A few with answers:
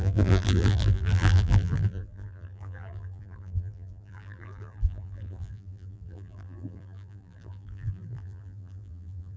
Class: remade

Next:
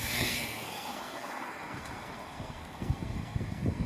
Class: remade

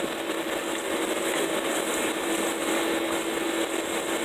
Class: recorded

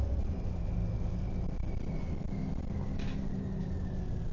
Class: recorded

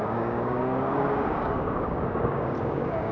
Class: remade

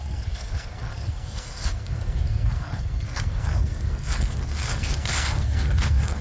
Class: remade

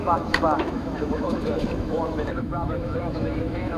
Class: remade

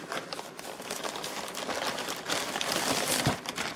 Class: recorded